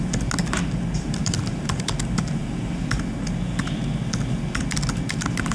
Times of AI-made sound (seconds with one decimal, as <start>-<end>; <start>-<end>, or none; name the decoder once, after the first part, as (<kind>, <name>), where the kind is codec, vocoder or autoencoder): 1.2-1.9 (vocoder, BigVGAN v2)